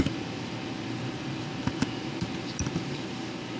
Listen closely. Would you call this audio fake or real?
fake